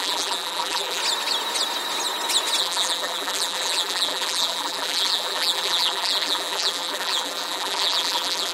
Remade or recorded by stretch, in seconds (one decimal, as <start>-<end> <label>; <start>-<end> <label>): 0.0-1.0 remade; 1.0-2.6 recorded; 2.6-8.5 remade